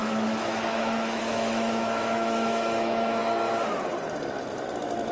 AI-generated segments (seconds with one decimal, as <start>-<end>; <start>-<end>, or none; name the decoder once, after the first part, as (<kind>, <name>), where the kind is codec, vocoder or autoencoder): 0.0-3.2 (autoencoder, DAC-VAE)